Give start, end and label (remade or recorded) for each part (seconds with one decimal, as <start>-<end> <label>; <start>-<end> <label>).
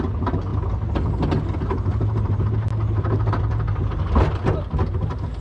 0.0-5.4 recorded